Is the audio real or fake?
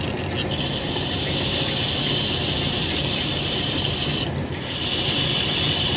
real